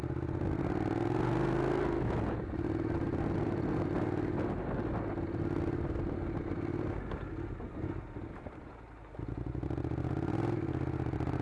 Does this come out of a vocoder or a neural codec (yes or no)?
no